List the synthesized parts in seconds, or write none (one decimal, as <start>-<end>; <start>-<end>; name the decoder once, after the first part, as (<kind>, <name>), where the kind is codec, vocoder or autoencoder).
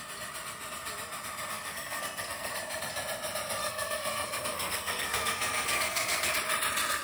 1.5-2.5 (codec, SNAC); 3.6-6.3